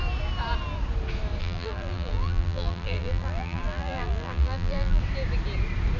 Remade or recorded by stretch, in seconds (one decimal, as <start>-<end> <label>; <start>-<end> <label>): 0.0-1.4 recorded; 1.4-5.0 remade; 5.0-6.0 recorded